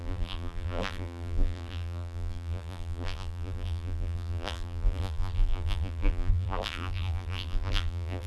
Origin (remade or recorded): remade